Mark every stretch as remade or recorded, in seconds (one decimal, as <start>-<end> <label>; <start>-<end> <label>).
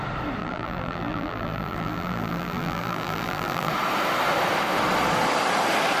0.0-0.4 recorded; 0.4-3.7 remade; 3.7-6.0 recorded